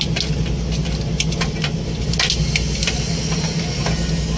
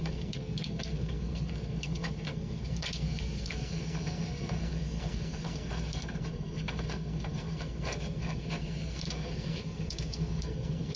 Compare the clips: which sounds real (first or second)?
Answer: first